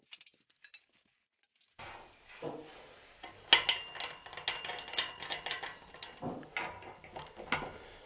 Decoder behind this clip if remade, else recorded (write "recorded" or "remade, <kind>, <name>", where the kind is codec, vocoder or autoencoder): recorded